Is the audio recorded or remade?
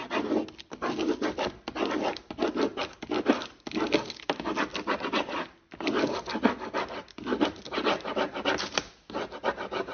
recorded